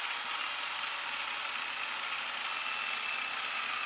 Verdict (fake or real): real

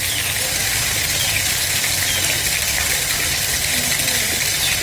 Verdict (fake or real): real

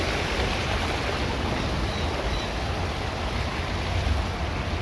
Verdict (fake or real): real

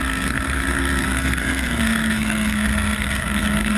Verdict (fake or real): fake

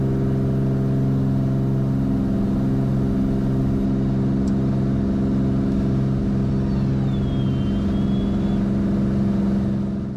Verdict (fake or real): real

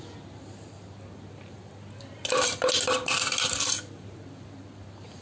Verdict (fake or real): real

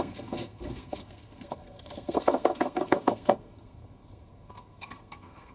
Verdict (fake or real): fake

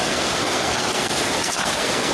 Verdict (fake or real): fake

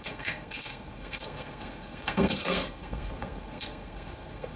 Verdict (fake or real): fake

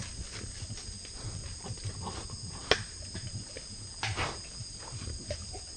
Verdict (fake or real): real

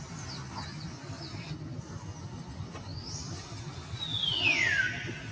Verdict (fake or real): real